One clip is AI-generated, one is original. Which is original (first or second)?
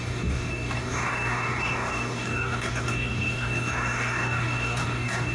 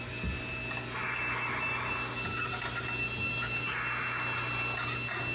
second